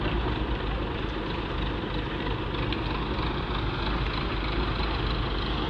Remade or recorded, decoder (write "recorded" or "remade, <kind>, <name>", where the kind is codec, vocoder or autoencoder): recorded